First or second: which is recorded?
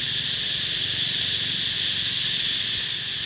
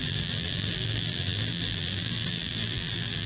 first